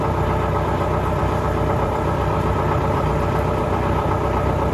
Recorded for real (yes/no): no